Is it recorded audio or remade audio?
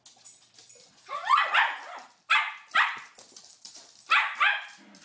recorded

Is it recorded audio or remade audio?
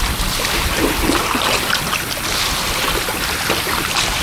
recorded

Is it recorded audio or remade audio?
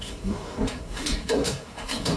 remade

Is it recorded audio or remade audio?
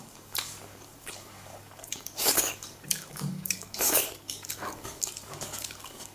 remade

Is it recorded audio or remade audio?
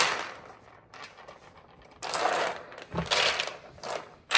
remade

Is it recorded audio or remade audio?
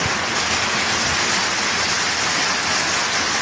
recorded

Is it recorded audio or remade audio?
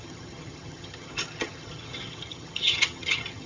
remade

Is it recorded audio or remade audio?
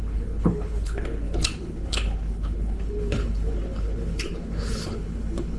remade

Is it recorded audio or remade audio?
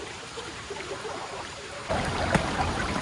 remade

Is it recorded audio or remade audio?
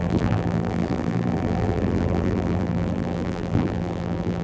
remade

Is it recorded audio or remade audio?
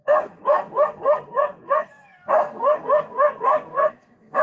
remade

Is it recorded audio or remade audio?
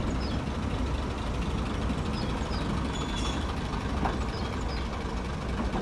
recorded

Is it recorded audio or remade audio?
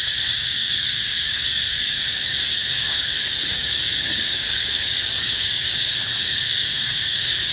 remade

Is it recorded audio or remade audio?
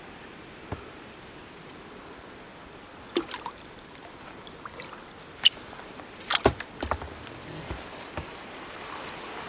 remade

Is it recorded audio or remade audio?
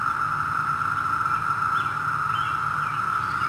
recorded